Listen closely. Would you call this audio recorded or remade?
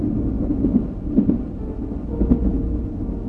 recorded